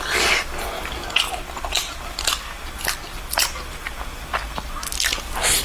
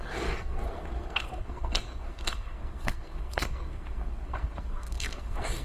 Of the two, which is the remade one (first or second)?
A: second